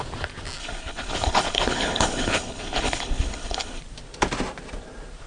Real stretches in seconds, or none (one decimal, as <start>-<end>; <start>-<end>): 0.0-0.6; 3.8-5.3